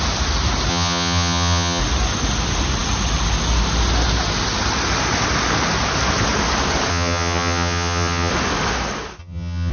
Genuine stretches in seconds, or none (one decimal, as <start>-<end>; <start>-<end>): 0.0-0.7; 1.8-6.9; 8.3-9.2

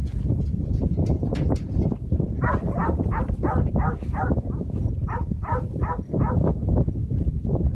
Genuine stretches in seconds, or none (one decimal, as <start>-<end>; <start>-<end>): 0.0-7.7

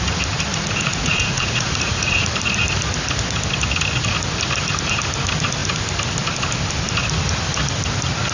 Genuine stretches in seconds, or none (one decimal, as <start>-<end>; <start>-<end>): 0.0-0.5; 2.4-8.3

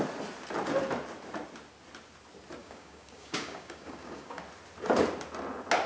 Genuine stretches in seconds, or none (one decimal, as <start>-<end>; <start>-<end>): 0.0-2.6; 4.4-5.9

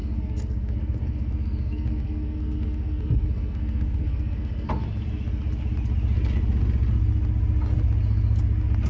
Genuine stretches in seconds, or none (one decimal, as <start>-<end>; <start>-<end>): 4.7-8.9